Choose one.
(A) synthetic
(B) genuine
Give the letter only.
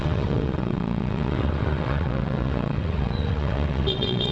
A